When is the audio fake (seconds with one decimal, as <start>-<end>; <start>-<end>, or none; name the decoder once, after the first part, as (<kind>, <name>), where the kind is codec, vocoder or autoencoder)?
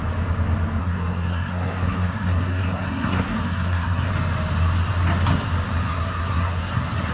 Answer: 0.8-4.1 (codec, SNAC); 5.9-7.1